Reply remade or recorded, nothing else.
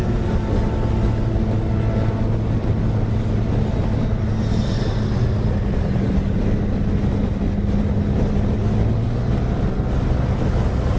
recorded